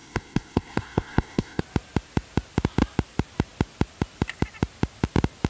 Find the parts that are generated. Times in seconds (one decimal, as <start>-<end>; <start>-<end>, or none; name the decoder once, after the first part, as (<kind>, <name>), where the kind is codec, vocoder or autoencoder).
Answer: 0.0-1.6 (codec, SNAC)